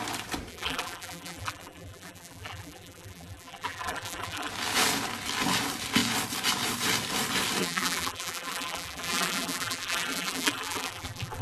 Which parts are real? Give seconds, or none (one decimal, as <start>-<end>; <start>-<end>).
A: 0.0-0.5; 4.5-7.6